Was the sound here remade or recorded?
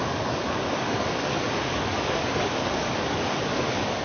remade